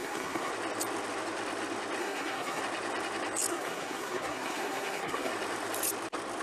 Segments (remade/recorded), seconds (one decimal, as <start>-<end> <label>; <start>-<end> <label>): 0.0-0.5 remade; 0.5-2.0 recorded; 2.0-2.6 remade; 2.6-3.5 recorded; 3.5-5.3 remade; 5.3-6.4 recorded